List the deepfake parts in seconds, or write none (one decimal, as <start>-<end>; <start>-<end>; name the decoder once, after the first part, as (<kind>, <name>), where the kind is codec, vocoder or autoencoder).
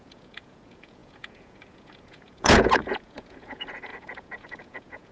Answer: 0.0-5.1 (vocoder, Vocos)